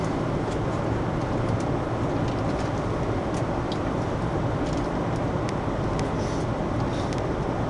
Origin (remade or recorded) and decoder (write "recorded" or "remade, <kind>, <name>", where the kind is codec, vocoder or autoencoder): recorded